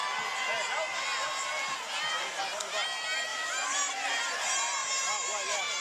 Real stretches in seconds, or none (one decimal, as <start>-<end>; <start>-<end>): 0.0-0.9; 2.4-3.3; 4.2-4.8

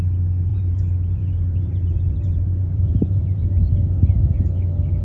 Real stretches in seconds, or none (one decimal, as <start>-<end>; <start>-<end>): 0.0-0.5; 3.5-5.0

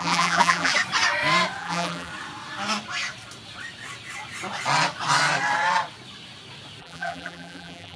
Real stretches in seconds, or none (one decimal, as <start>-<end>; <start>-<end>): 0.7-1.6; 2.1-6.8